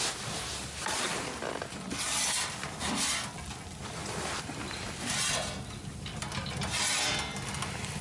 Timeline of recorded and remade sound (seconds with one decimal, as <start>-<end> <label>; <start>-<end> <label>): 0.0-8.0 recorded